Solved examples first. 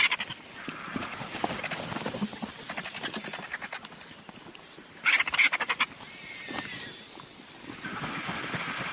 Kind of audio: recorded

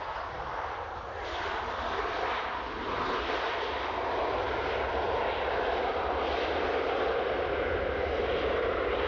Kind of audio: recorded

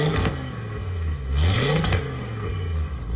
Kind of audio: remade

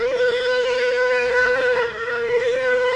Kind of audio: remade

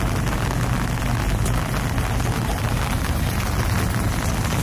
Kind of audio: recorded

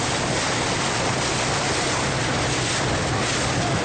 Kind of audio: recorded